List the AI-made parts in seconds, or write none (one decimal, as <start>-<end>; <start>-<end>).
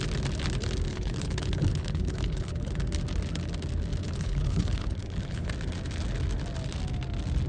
0.9-2.7; 4.0-5.5